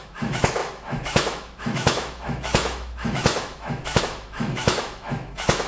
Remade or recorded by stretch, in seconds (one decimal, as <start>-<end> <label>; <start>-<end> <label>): 0.0-5.7 remade